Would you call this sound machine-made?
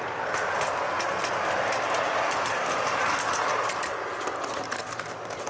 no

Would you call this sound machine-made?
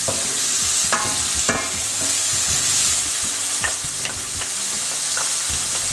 no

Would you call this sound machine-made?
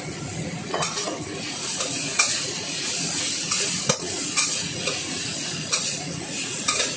yes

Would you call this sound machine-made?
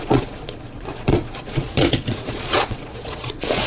yes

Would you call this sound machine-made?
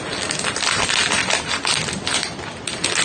no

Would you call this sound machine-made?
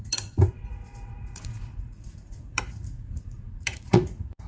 yes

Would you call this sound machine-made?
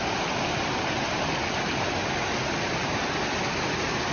no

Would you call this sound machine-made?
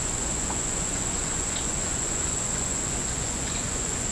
yes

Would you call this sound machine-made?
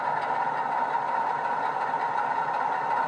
no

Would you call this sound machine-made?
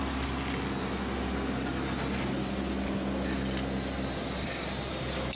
no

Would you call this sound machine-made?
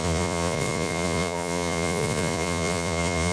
yes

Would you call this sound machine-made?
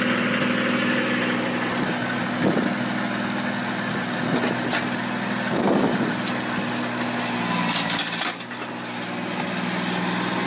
no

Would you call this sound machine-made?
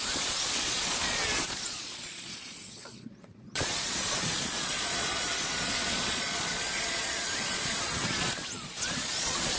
yes